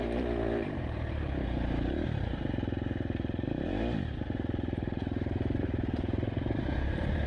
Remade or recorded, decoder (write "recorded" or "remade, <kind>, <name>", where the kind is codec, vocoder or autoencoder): remade, vocoder, BigVGAN v2